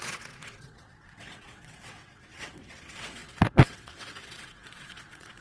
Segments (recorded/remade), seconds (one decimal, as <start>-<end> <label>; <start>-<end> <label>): 0.0-5.4 remade